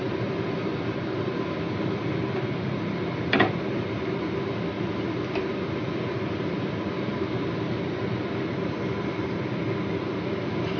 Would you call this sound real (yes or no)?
yes